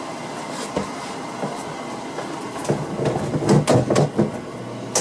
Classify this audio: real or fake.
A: real